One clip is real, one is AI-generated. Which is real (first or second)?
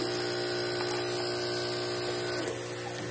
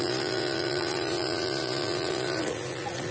first